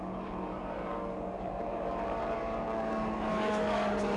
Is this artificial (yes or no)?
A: yes